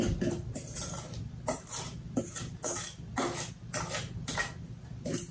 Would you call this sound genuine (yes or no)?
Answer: yes